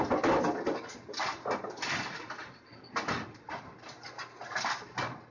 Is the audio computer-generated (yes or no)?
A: no